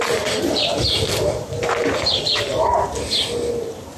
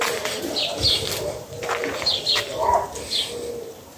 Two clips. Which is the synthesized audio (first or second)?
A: first